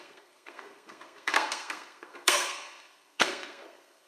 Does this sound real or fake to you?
fake